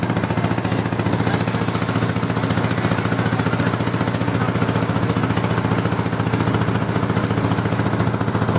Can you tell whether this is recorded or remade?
recorded